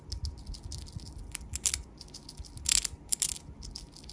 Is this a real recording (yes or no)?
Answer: yes